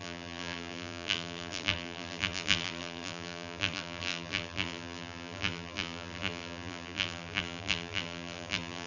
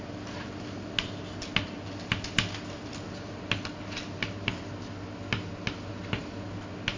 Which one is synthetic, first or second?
first